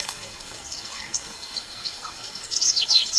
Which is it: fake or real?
fake